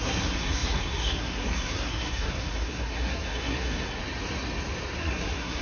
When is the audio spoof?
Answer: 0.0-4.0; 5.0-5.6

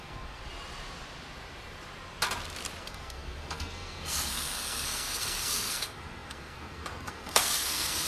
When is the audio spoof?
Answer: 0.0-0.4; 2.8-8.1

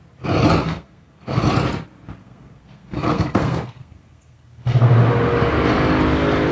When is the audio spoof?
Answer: 0.6-1.4; 2.2-4.9